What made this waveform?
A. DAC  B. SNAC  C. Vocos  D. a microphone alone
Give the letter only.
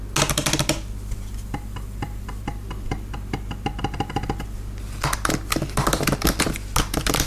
D